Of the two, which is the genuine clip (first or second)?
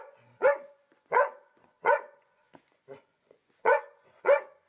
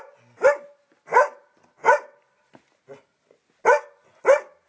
second